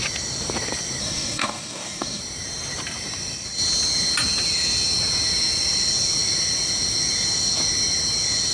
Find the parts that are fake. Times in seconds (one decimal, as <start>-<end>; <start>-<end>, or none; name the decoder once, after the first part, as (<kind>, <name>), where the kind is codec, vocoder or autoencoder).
1.0-2.2 (codec, DAC)